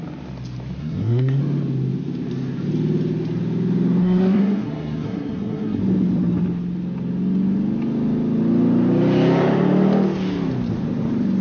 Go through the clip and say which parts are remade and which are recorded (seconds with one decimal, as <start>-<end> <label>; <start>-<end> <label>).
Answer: 0.0-0.8 recorded; 0.8-1.4 remade; 1.4-4.0 recorded; 4.0-5.8 remade; 5.8-11.4 recorded